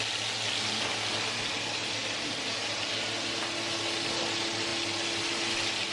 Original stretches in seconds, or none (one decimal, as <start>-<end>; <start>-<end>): 0.0-5.9